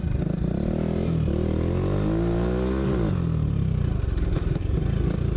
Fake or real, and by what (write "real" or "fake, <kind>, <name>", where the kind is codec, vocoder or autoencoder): real